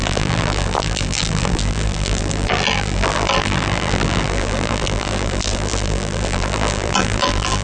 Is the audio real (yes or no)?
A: no